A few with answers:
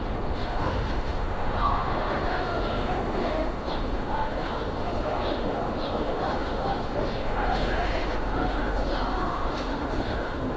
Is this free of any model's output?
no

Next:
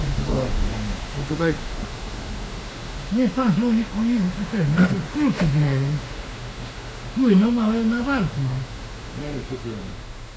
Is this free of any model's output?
no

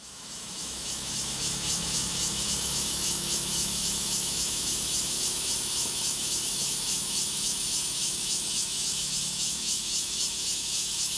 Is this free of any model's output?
no